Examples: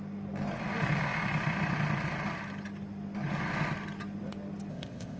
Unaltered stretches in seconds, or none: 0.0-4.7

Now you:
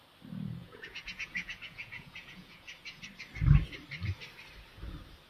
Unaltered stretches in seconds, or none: 0.0-0.6; 3.0-5.3

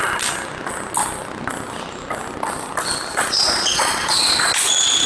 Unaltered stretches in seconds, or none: 0.0-3.1

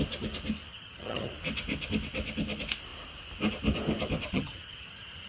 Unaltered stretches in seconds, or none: 0.0-0.7; 1.3-4.3

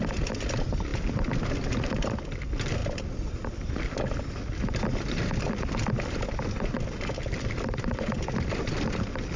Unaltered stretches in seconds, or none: 0.0-9.4

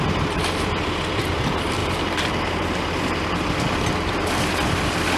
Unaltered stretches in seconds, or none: 0.0-1.8; 3.0-5.2

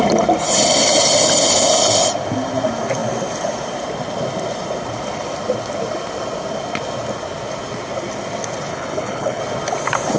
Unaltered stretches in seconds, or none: 0.0-8.7; 9.4-10.2

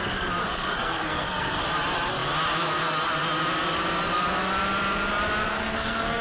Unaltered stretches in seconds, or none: 0.0-0.4; 1.6-5.5